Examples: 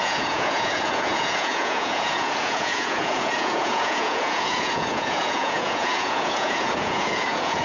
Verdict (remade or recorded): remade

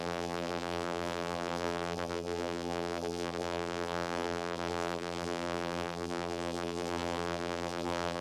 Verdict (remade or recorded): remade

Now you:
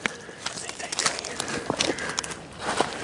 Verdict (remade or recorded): recorded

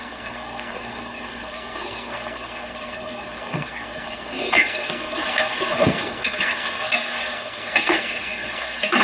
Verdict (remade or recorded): remade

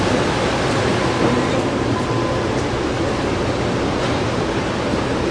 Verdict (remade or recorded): remade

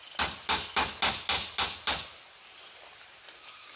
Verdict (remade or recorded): recorded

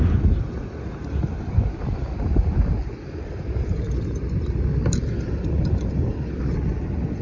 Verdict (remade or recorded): recorded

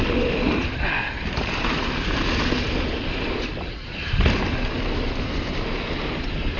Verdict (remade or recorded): recorded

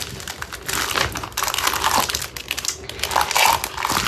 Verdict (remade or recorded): recorded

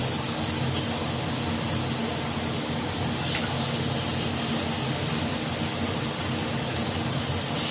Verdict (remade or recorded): recorded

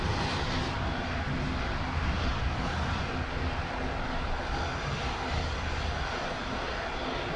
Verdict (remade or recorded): recorded